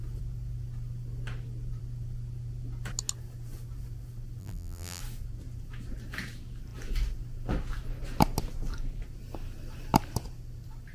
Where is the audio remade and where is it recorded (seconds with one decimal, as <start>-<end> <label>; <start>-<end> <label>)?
0.0-4.4 recorded; 4.4-5.0 remade; 5.0-10.9 recorded